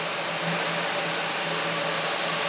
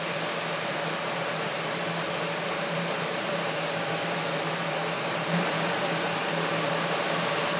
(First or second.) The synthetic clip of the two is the second